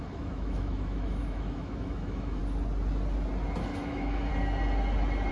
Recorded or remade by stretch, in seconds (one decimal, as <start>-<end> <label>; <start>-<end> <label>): 0.0-2.4 remade; 2.4-3.6 recorded; 3.6-4.3 remade; 4.3-5.3 recorded